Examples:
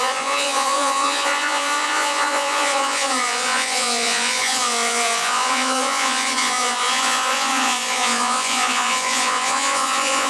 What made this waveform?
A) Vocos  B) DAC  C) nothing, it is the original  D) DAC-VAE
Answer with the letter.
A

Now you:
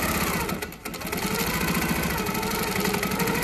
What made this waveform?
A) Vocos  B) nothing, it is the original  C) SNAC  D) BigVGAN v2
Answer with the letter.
B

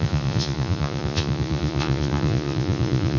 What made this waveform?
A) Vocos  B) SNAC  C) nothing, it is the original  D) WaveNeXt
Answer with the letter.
A